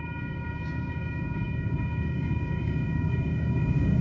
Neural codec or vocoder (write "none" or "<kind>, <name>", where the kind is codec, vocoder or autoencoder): codec, DAC